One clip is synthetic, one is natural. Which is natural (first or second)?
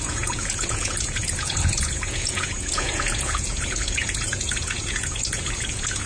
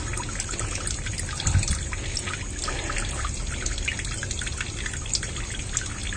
second